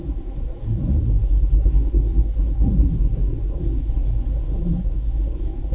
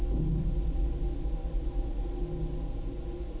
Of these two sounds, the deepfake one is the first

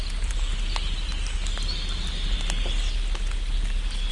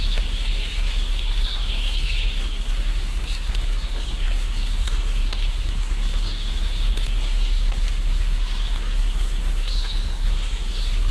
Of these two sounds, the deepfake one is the second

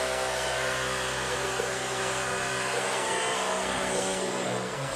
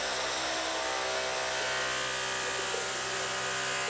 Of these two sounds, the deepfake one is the first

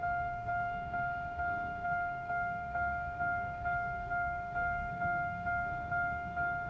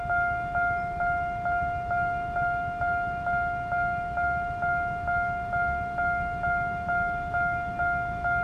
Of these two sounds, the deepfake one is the first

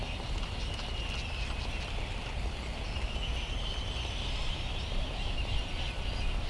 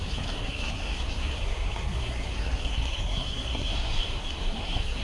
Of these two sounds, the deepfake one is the second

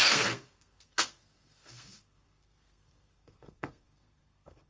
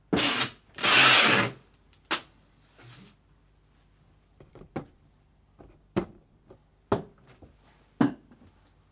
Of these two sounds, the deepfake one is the first